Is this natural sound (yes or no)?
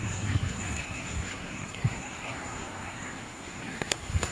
no